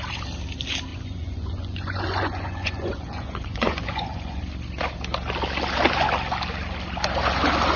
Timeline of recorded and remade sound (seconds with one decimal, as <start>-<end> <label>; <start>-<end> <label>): 0.0-0.9 recorded; 0.9-4.4 remade; 4.4-7.8 recorded